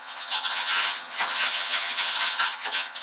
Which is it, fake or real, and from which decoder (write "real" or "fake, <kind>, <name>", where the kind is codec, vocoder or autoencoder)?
fake, vocoder, HiFi-GAN